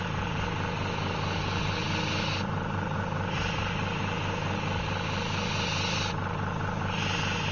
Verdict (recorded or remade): recorded